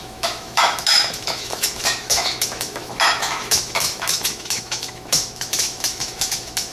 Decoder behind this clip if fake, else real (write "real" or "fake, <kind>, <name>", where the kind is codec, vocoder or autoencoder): fake, autoencoder, DAC-VAE